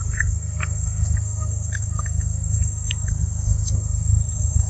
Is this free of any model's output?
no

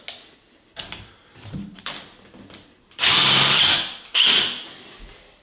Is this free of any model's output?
yes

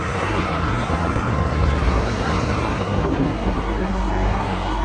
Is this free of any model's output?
no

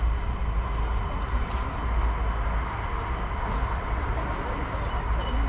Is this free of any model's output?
yes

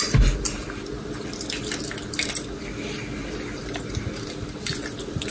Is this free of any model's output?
yes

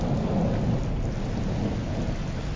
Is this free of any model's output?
yes